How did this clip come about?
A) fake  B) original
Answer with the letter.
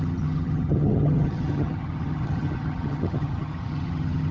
A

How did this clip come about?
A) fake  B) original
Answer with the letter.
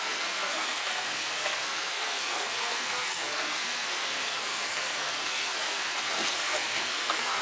A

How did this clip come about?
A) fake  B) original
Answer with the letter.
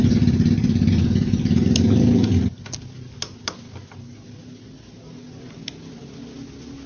B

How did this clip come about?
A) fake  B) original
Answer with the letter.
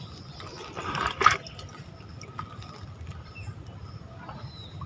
B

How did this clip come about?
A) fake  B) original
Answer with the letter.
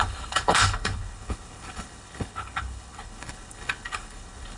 A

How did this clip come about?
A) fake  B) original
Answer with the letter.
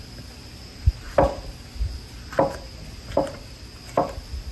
B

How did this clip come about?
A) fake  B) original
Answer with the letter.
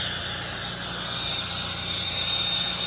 B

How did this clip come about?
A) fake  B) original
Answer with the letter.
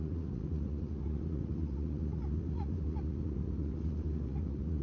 A